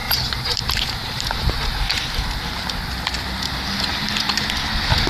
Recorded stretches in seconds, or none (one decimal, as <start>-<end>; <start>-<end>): 2.0-3.9; 4.4-5.1